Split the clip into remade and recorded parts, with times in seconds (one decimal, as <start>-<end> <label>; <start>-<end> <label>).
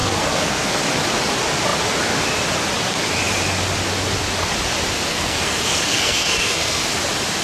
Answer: 0.0-0.8 remade; 0.8-5.1 recorded; 5.1-6.9 remade; 6.9-7.4 recorded